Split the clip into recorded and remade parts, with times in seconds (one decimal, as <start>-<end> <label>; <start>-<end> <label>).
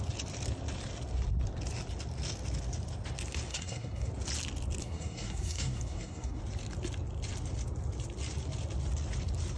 0.0-3.5 recorded; 3.5-4.1 remade; 4.1-4.8 recorded; 4.8-6.4 remade; 6.4-9.6 recorded